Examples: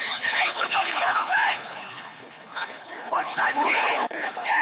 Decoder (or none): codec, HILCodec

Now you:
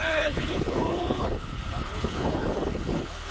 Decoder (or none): codec, HILCodec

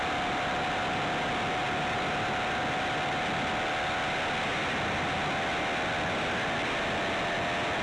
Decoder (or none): none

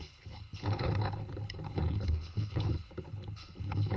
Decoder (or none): codec, HILCodec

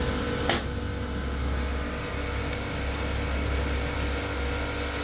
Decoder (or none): none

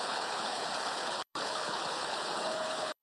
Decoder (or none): codec, HILCodec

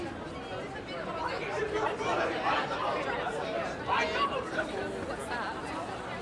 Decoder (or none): none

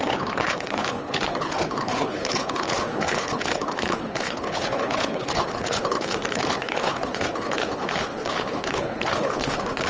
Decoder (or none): codec, HILCodec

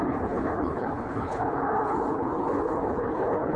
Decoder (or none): codec, HILCodec